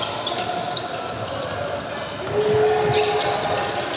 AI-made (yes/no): no